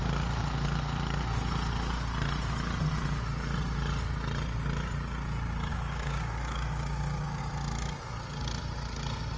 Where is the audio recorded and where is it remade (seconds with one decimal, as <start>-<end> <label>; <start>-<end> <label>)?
0.0-5.7 recorded; 5.7-7.4 remade; 7.4-9.4 recorded